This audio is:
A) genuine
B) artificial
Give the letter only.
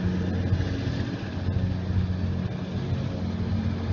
A